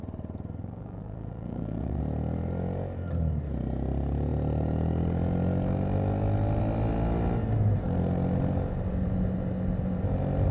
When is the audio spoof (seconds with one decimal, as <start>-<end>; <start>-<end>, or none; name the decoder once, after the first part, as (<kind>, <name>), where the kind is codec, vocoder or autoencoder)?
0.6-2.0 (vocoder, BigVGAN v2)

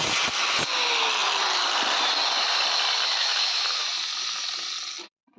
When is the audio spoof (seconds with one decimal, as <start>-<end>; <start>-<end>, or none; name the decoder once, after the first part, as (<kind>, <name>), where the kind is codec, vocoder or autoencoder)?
3.1-3.8 (autoencoder, DAC-VAE)

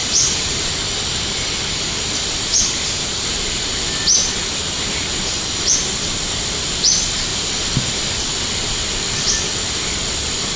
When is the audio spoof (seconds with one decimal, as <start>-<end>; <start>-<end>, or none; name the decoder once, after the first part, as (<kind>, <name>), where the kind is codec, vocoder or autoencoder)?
0.0-0.7 (vocoder, BigVGAN v2); 2.5-3.3

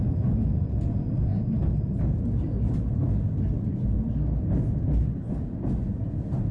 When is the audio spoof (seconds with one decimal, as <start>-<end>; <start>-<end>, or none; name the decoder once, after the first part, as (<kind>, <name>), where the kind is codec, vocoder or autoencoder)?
none

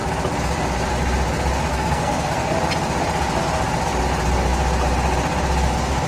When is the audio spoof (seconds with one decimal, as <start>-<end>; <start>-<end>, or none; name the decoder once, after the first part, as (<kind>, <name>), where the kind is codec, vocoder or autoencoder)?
1.7-2.5 (codec, SNAC)

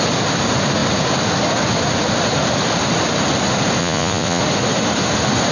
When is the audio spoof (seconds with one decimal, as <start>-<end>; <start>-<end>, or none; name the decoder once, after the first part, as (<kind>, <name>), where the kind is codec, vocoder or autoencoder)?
3.8-4.4 (vocoder, Vocos)

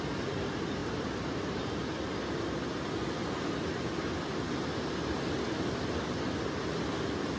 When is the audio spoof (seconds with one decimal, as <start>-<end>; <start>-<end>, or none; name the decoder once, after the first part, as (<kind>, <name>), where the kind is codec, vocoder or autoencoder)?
0.8-1.7 (vocoder, BigVGAN v2)